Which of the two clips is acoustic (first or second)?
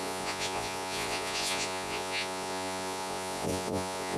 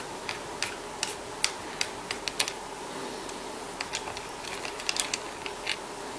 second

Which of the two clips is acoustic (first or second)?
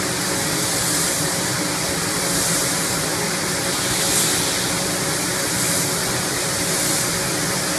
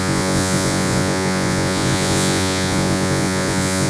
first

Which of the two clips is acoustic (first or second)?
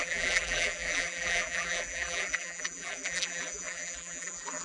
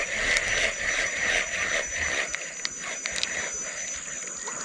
second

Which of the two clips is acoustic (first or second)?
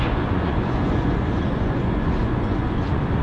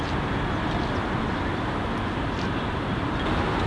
second